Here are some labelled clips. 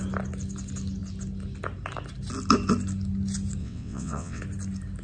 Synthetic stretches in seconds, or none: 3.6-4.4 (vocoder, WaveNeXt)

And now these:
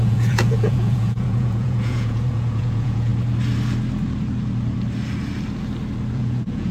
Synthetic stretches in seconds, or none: 0.0-3.1 (vocoder, Vocos); 6.1-6.7

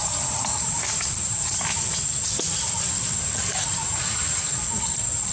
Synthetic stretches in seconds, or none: 0.0-1.6 (vocoder, BigVGAN v2); 3.8-4.5

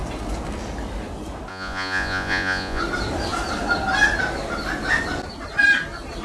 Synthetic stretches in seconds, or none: 1.5-2.8 (vocoder, Vocos)

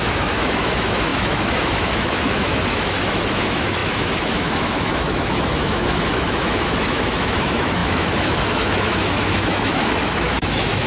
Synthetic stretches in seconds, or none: 0.0-10.9 (autoencoder, DAC-VAE)